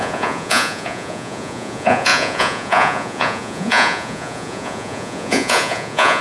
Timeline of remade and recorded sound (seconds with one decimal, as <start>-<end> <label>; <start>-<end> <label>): 0.0-6.2 remade